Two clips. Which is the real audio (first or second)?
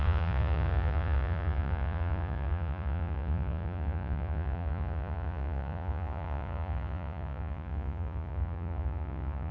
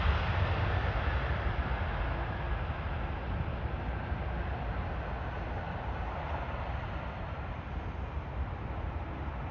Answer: second